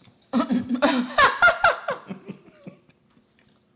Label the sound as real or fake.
real